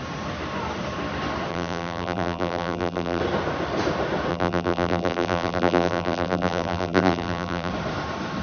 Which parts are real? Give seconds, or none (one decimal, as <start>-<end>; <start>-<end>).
0.0-1.5; 3.2-4.3; 7.7-8.4